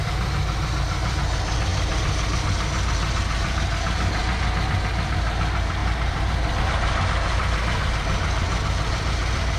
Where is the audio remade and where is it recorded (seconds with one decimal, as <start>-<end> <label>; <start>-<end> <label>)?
0.0-9.6 recorded